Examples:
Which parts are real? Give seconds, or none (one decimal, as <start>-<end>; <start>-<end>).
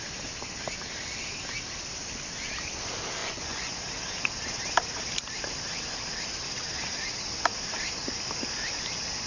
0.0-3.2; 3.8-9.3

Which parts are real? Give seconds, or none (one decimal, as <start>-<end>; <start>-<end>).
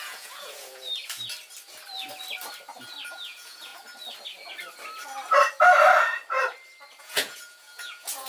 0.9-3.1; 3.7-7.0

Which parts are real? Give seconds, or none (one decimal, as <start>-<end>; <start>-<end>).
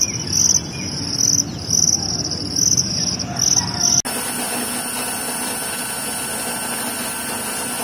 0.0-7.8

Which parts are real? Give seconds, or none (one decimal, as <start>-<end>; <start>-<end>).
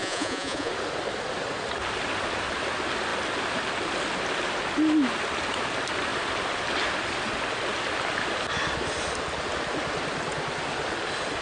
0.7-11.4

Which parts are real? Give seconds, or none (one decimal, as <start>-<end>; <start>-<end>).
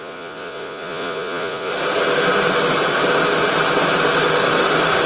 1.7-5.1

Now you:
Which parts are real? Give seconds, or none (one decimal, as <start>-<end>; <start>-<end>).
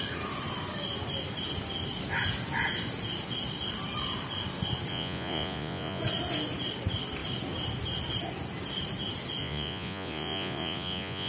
0.0-4.9; 6.0-9.4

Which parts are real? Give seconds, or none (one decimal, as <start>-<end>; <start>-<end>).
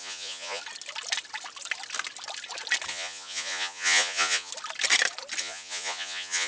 0.6-2.9; 4.5-5.4